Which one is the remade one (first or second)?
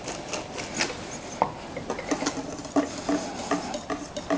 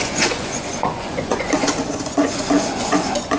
second